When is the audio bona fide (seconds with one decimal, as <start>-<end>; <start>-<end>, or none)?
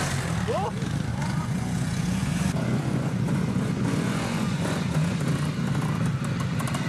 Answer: 0.0-1.1; 5.2-6.9